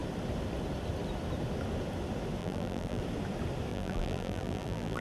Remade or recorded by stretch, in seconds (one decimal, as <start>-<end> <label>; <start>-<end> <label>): 0.0-2.4 recorded; 2.4-3.0 remade; 3.0-3.7 recorded; 3.7-5.0 remade